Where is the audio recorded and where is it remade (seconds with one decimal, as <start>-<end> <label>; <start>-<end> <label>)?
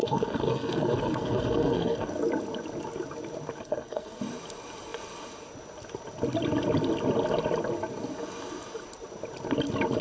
0.0-2.1 remade; 2.1-3.6 recorded; 3.6-4.2 remade; 4.2-10.0 recorded